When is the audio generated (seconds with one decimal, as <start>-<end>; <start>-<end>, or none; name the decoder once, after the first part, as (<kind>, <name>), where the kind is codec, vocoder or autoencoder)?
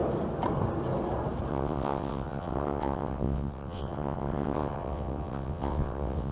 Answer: 1.5-6.3 (vocoder, WaveNeXt)